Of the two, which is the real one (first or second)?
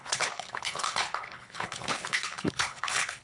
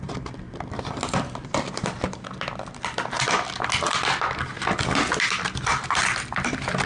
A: second